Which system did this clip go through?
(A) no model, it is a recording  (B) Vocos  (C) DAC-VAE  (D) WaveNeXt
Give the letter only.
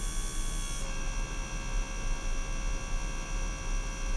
A